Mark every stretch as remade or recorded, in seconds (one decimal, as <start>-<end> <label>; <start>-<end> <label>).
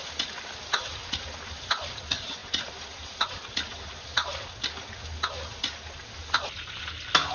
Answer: 0.0-7.3 recorded